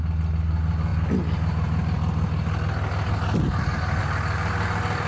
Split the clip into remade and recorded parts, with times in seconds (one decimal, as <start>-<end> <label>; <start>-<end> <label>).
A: 0.0-5.1 recorded